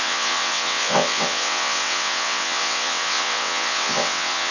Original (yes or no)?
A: no